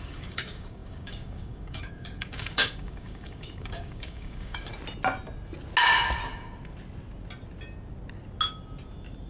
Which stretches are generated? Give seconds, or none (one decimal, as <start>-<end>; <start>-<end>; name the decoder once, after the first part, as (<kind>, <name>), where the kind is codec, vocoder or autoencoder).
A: 0.0-4.7 (codec, DAC)